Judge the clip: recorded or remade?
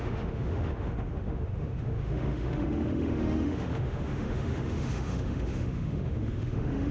remade